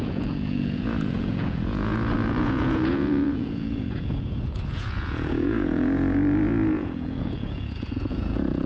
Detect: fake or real fake